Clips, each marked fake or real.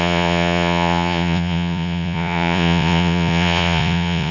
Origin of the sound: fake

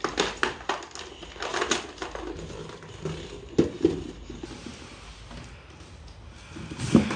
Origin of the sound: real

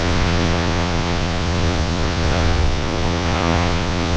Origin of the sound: fake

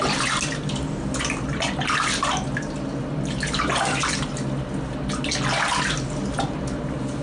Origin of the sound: real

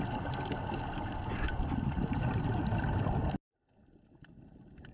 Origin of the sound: real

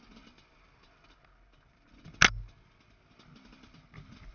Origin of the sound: real